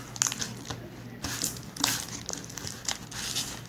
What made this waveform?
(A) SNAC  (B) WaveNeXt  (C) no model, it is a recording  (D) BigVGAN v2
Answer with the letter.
C